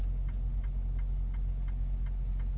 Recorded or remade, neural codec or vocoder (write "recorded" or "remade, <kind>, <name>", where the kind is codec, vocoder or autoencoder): recorded